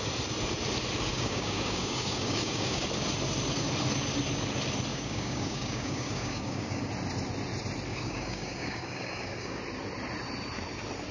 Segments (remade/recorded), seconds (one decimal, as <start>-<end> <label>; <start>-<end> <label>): 0.0-1.1 recorded; 1.1-2.8 remade; 2.8-4.9 recorded; 4.9-6.9 remade; 6.9-7.9 recorded; 7.9-9.6 remade; 9.6-11.1 recorded